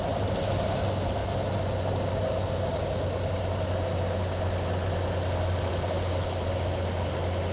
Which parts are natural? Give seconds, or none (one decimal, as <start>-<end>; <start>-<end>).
0.0-7.5

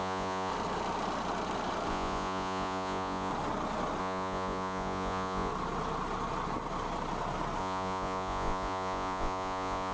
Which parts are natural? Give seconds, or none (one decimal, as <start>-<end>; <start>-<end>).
0.5-1.9; 3.3-4.0; 5.5-7.6

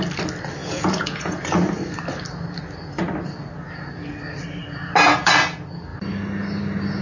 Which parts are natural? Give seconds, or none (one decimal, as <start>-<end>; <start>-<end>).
0.0-0.6; 1.4-7.0

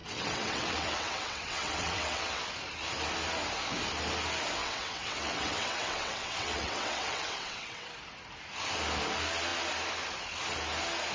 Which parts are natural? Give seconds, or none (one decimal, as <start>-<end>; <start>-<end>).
2.4-4.6; 7.8-11.1

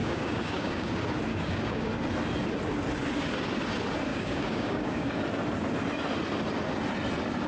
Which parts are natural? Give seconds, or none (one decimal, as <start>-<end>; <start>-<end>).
0.9-1.3; 1.9-4.1; 5.1-7.5

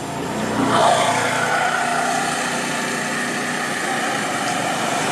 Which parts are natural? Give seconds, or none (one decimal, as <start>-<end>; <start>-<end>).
0.0-0.8; 1.5-5.1

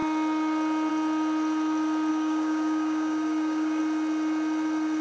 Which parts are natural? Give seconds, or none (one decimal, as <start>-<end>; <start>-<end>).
0.0-2.1; 3.8-5.0

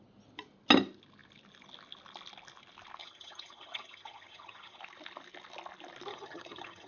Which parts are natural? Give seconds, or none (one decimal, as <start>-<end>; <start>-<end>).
0.0-3.0; 4.8-6.1